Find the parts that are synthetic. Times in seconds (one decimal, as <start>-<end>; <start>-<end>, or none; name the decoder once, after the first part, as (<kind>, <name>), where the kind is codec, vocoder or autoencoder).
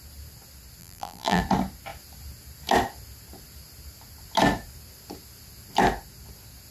0.8-1.4 (vocoder, BigVGAN v2)